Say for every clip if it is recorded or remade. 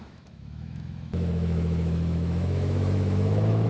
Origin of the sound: remade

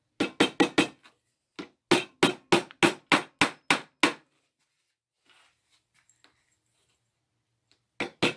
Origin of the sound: recorded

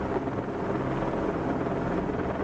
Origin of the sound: recorded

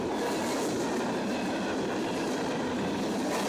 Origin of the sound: recorded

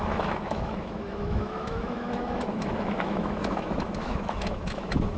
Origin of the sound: remade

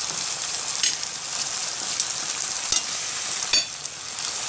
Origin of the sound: recorded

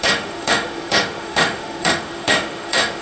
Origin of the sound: remade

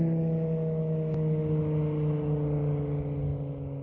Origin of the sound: recorded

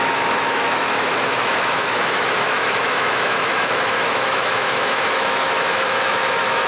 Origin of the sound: remade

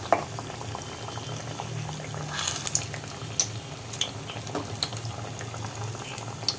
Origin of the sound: recorded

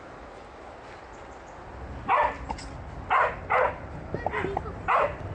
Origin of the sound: recorded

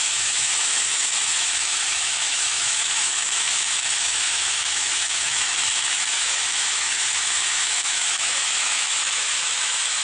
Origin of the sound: remade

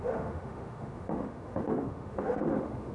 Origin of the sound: remade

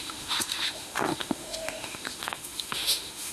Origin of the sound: remade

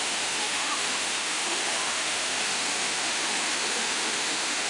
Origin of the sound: remade